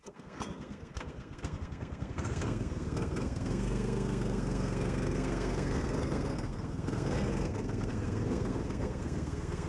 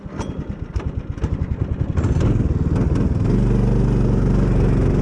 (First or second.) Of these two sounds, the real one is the second